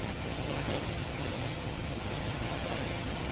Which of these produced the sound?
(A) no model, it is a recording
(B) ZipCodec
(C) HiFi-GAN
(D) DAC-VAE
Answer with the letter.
C